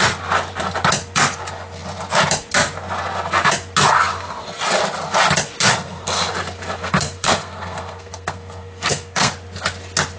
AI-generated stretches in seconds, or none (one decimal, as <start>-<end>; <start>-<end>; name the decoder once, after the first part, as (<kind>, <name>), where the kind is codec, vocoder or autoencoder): 5.7-6.3 (codec, SNAC); 6.8-9.3